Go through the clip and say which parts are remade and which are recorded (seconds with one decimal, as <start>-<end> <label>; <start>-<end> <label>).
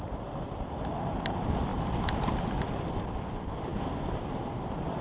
0.0-5.0 recorded